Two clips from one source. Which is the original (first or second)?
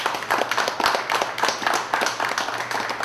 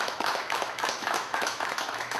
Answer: first